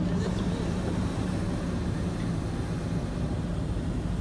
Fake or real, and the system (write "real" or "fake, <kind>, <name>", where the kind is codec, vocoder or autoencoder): fake, vocoder, BigVGAN v2